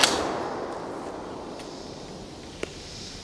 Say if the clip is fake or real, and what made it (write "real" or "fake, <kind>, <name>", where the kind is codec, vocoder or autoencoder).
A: real